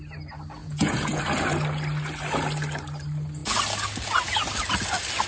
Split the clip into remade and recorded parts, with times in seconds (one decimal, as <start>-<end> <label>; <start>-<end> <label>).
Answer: 0.0-0.6 recorded; 0.6-1.2 remade; 1.2-5.3 recorded

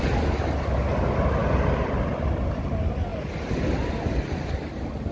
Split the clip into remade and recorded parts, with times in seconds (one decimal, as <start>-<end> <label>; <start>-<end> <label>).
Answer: 0.0-5.1 recorded